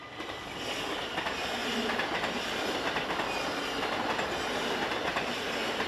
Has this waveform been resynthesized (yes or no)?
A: no